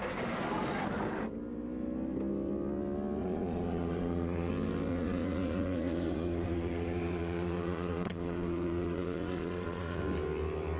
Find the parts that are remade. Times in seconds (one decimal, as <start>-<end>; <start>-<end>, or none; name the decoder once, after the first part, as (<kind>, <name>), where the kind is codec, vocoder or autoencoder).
3.2-4.5 (vocoder, Vocos); 4.9-10.0